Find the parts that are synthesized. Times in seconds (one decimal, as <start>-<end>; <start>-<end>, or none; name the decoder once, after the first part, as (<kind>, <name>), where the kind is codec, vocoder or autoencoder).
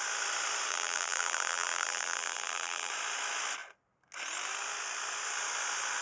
0.7-2.9 (vocoder, BigVGAN v2)